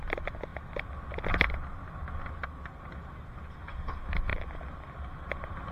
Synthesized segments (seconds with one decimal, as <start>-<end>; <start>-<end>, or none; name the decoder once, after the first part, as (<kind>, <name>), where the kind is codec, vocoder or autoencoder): none